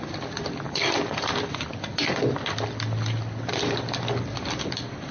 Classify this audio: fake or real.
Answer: fake